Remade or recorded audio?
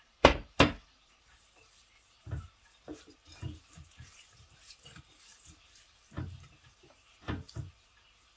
remade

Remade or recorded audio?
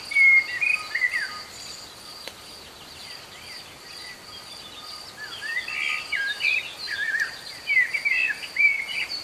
recorded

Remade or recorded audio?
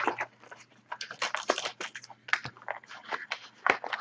recorded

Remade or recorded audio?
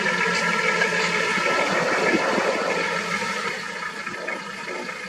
recorded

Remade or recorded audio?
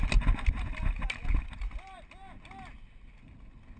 recorded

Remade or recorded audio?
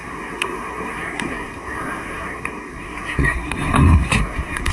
remade